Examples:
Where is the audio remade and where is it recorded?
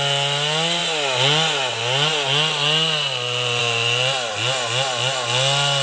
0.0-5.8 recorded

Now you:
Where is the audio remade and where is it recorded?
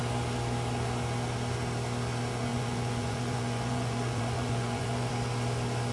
0.0-2.5 recorded; 2.5-5.1 remade; 5.1-5.9 recorded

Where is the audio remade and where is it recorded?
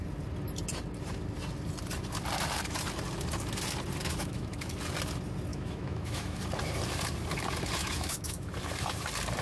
0.0-4.0 recorded; 4.0-4.7 remade; 4.7-5.5 recorded; 5.5-6.4 remade; 6.4-7.8 recorded; 7.8-8.5 remade; 8.5-9.4 recorded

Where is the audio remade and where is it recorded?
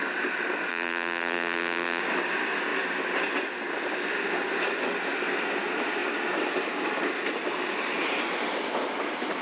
0.0-0.7 recorded; 0.7-2.0 remade; 2.0-9.4 recorded